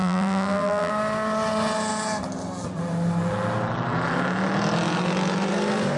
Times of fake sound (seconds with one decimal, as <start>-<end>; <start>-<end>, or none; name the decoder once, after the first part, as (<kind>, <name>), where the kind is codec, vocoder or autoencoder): 0.0-0.9 (vocoder, BigVGAN v2)